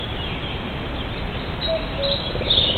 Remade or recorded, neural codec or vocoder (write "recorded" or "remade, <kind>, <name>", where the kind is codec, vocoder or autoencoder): recorded